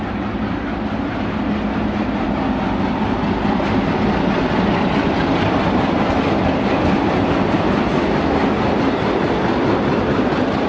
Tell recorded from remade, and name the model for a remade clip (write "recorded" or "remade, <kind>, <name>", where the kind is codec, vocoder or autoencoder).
recorded